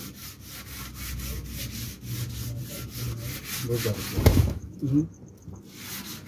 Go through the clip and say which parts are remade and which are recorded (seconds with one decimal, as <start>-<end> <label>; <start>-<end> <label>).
0.0-4.3 recorded; 4.3-4.9 remade; 4.9-6.3 recorded